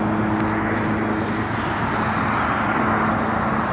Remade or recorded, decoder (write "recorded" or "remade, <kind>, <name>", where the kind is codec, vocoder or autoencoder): recorded